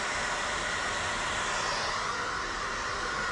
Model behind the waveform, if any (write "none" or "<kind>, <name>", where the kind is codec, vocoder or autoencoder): none